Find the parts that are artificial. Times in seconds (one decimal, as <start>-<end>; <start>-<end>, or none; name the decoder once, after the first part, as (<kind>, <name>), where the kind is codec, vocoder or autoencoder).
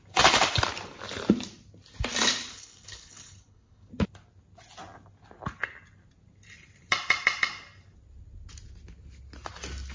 2.5-3.9 (codec, HILCodec)